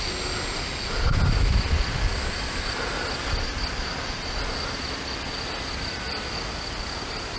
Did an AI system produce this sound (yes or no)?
no